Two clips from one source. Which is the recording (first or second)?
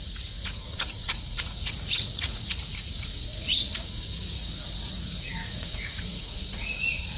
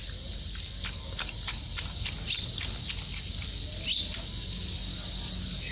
second